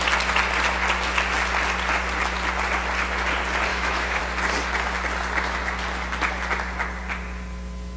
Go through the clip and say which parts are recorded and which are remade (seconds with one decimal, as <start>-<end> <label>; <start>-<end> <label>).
0.0-3.7 recorded; 3.7-4.2 remade; 4.2-8.0 recorded